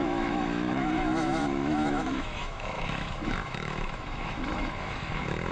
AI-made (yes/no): yes